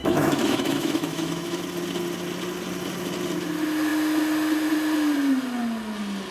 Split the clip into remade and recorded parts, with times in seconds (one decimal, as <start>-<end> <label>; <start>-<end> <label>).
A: 0.0-1.6 remade; 1.6-6.3 recorded